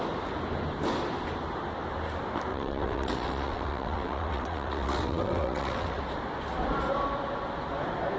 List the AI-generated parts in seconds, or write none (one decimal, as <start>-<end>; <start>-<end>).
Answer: 2.5-6.0